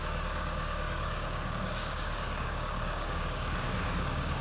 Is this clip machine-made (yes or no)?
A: yes